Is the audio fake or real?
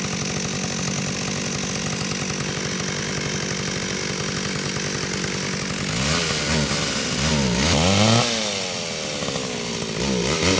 real